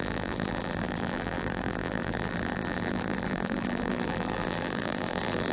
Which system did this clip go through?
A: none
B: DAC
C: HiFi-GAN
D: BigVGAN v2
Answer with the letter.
D